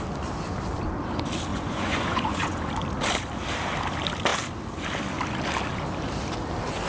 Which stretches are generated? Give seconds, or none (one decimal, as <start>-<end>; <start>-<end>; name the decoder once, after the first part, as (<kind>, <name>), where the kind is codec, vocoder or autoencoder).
1.5-2.7 (vocoder, Vocos)

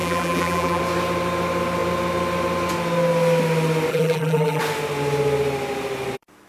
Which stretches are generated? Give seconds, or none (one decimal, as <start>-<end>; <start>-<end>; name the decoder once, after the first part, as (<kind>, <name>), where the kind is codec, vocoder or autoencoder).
0.0-0.8 (vocoder, BigVGAN v2); 3.9-4.6

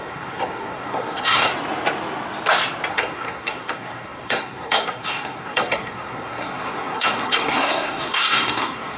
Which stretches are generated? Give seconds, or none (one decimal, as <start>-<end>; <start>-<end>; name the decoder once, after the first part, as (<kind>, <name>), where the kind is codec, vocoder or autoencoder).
0.0-1.5 (codec, SNAC); 2.9-9.0

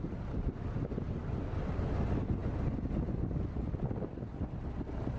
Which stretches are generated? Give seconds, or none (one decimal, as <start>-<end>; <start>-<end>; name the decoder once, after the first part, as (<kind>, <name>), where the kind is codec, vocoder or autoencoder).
none